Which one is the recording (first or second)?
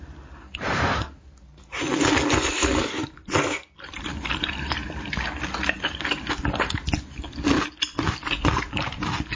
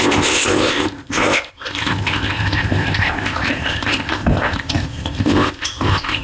first